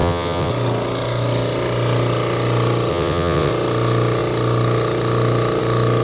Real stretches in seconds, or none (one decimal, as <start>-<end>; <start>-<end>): 0.5-2.9; 3.5-6.0